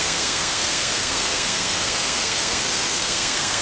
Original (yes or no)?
no